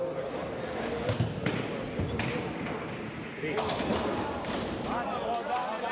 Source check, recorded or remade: recorded